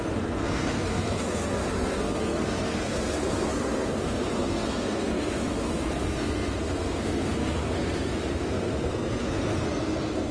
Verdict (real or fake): fake